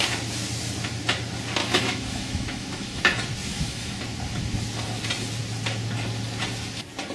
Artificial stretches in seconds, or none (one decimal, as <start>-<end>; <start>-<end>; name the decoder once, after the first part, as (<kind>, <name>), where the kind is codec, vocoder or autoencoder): 1.6-3.0 (autoencoder, DAC-VAE); 3.5-4.0